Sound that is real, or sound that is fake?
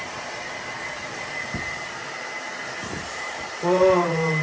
fake